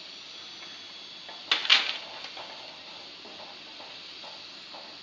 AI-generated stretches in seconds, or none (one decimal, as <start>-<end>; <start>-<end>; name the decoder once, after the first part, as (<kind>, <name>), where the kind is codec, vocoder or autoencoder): 1.6-2.7 (vocoder, BigVGAN v2)